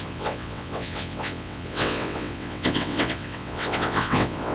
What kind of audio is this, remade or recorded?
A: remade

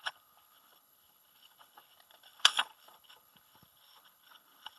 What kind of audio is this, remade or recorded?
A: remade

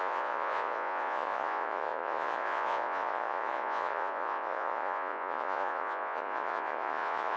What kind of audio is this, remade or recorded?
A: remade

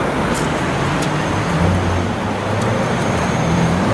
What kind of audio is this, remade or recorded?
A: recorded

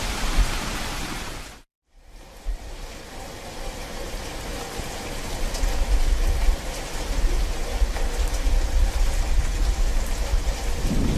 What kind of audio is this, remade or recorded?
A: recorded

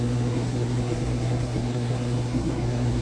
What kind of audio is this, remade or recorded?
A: remade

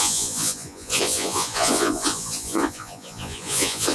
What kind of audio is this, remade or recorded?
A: remade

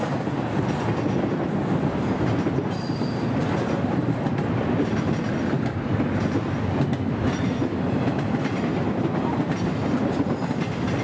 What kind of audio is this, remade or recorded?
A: recorded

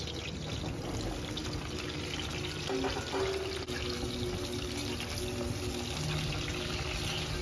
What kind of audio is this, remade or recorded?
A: recorded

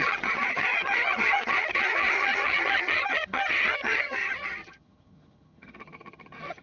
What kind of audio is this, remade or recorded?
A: remade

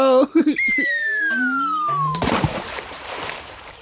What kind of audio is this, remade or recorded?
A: remade